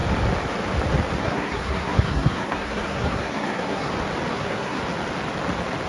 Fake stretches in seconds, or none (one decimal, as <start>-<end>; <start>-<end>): 1.2-3.9; 4.3-4.8